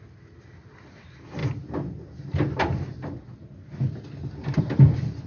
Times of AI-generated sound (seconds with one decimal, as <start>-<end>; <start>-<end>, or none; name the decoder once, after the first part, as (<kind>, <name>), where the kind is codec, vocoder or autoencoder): none